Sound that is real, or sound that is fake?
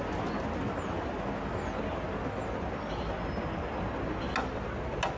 real